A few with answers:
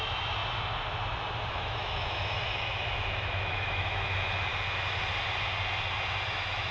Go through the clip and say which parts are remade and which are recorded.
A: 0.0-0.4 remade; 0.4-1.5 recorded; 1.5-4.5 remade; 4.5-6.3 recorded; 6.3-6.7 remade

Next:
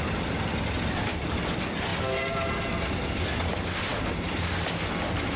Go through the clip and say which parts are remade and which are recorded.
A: 0.0-5.4 recorded

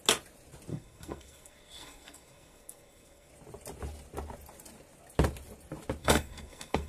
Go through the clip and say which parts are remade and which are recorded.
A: 0.0-0.7 recorded; 0.7-3.3 remade; 3.3-6.0 recorded; 6.0-6.9 remade

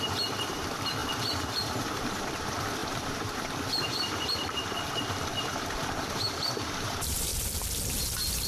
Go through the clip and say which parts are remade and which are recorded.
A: 0.0-7.3 remade; 7.3-7.9 recorded; 7.9-8.5 remade